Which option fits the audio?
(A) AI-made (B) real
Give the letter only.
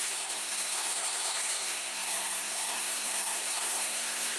A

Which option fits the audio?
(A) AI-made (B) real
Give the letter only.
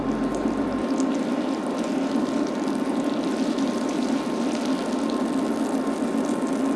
B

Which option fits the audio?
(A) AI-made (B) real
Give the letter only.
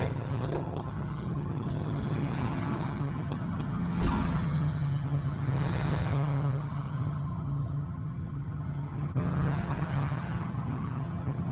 A